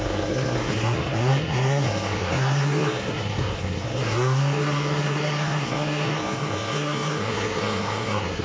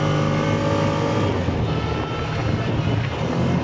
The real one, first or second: second